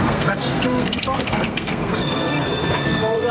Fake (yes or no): yes